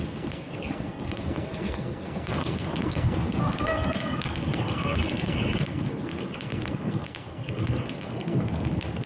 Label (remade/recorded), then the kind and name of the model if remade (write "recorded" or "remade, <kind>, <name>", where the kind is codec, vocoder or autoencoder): remade, codec, SNAC